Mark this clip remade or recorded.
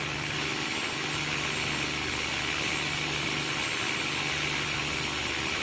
recorded